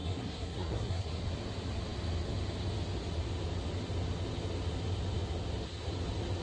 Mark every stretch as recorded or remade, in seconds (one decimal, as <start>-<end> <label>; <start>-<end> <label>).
0.0-1.2 remade; 1.2-6.4 recorded